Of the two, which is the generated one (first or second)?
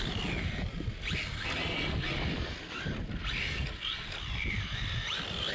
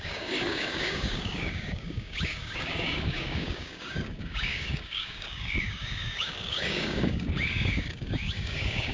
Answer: second